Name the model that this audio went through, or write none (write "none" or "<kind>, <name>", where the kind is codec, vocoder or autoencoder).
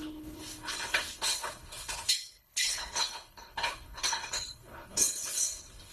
codec, HILCodec